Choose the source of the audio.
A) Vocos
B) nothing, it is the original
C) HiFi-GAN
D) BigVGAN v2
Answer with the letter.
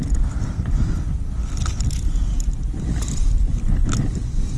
B